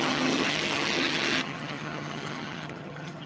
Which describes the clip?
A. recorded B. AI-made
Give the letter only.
B